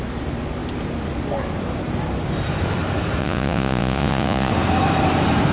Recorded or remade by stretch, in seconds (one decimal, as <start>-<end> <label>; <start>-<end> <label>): 0.0-3.2 recorded; 3.2-4.5 remade; 4.5-5.5 recorded